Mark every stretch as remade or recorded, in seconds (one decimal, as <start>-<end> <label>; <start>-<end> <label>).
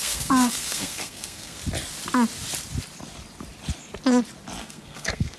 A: 0.0-1.6 remade; 1.6-4.6 recorded; 4.6-5.4 remade